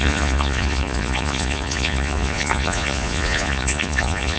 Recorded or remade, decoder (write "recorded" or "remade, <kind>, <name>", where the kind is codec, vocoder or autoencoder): remade, vocoder, Vocos